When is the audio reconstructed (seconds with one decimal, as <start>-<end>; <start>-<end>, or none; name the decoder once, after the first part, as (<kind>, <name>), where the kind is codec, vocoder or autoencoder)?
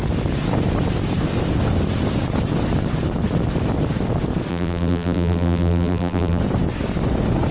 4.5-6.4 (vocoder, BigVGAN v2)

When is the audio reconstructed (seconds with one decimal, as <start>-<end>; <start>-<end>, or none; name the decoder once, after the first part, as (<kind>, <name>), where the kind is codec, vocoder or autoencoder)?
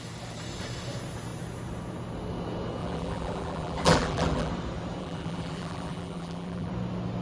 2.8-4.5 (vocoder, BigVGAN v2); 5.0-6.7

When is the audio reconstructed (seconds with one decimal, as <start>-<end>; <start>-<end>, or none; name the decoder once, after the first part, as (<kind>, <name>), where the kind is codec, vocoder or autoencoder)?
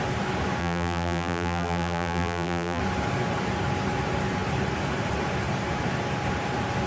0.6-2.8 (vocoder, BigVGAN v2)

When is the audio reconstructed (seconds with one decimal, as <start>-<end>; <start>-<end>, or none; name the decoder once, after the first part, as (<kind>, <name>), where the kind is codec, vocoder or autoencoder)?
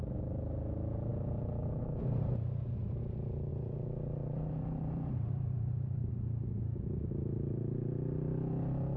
1.1-3.0 (vocoder, BigVGAN v2); 3.5-6.1